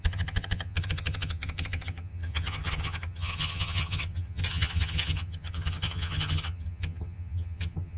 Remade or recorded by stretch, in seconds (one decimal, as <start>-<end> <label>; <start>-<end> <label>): 0.0-8.0 remade